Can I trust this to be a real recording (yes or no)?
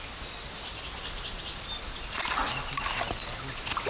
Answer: yes